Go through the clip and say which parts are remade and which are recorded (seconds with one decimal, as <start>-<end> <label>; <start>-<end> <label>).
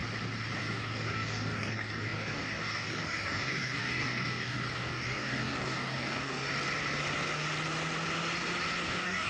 0.0-0.6 recorded; 0.6-6.5 remade; 6.5-8.8 recorded; 8.8-9.3 remade